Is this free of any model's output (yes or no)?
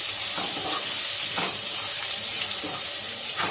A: yes